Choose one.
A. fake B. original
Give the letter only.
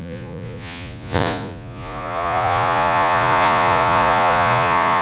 A